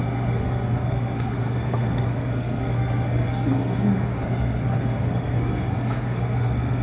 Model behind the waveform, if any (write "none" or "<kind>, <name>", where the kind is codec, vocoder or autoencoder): codec, SNAC